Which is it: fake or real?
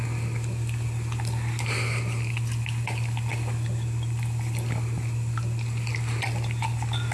real